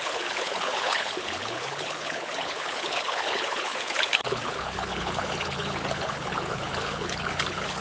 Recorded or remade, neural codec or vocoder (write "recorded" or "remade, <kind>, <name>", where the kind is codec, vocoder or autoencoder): remade, codec, HILCodec